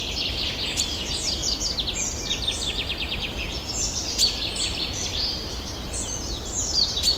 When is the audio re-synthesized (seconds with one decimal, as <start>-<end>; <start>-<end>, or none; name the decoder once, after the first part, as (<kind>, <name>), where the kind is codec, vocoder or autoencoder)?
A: none